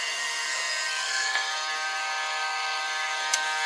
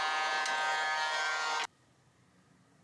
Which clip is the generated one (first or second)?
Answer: first